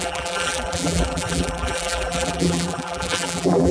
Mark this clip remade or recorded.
remade